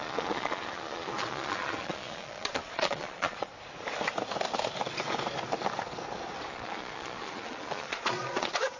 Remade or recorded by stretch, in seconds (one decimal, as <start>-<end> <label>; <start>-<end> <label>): 0.0-3.5 remade; 3.5-6.5 recorded; 6.5-8.8 remade